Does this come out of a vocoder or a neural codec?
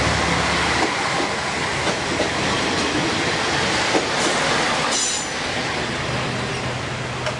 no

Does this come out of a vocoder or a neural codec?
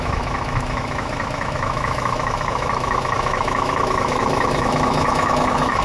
yes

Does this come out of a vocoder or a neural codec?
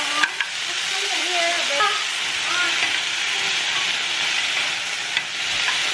no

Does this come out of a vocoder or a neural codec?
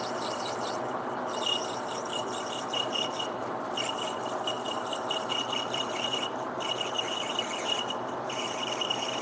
yes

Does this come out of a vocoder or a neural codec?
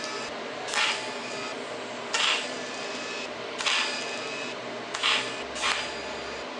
no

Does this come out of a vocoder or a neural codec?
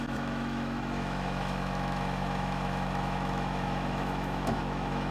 yes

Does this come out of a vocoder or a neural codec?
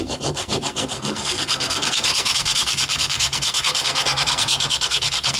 yes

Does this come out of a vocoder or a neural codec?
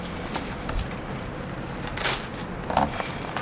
yes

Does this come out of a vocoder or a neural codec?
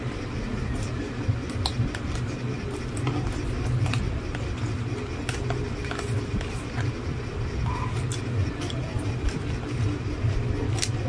no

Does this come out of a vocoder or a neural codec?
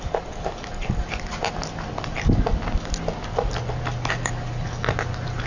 no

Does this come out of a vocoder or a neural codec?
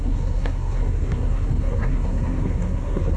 yes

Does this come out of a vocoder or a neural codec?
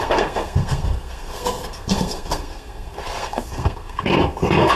yes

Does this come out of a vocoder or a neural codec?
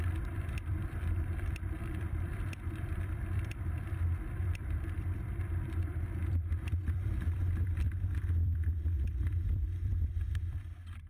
yes